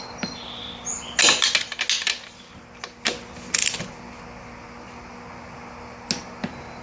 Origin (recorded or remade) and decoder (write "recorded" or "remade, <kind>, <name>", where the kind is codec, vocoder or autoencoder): recorded